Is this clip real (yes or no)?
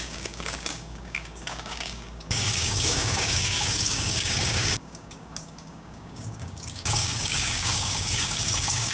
no